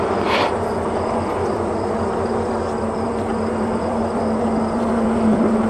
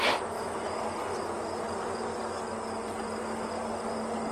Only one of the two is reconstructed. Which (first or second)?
first